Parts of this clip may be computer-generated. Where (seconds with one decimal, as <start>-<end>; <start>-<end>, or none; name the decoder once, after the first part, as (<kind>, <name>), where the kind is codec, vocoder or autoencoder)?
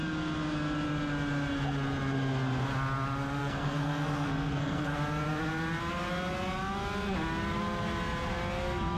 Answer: 3.4-5.0 (codec, SNAC)